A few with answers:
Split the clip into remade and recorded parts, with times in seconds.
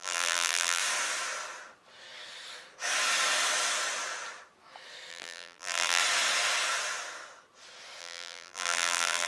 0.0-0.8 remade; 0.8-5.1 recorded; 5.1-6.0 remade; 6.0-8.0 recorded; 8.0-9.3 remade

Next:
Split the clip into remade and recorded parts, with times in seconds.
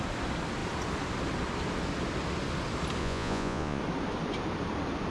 0.0-3.0 recorded; 3.0-3.8 remade; 3.8-5.1 recorded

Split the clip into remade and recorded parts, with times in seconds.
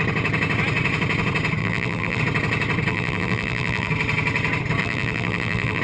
0.0-1.6 recorded; 1.6-2.2 remade; 2.2-2.9 recorded; 2.9-3.9 remade; 3.9-4.8 recorded; 4.8-5.8 remade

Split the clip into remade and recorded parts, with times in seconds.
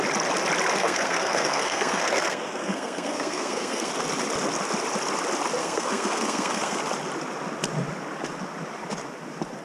0.0-0.8 recorded; 0.8-3.9 remade; 3.9-5.6 recorded; 5.6-6.8 remade; 6.8-9.6 recorded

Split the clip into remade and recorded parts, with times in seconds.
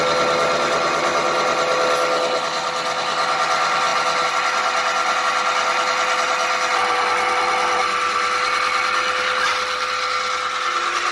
0.0-11.1 recorded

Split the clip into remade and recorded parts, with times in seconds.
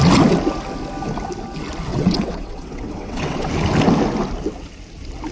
0.0-1.9 recorded; 1.9-3.5 remade; 3.5-5.3 recorded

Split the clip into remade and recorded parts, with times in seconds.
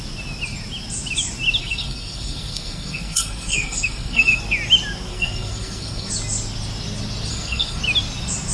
0.0-1.6 recorded; 1.6-4.4 remade; 4.4-5.1 recorded; 5.1-6.1 remade; 6.1-7.3 recorded; 7.3-7.8 remade; 7.8-8.5 recorded